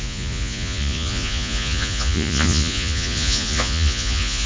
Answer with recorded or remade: remade